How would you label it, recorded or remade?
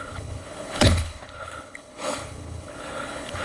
remade